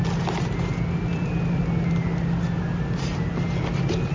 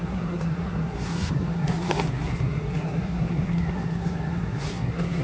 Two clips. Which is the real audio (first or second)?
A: first